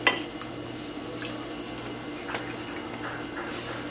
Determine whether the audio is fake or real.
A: real